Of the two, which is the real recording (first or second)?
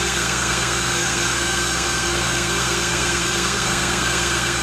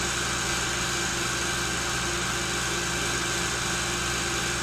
second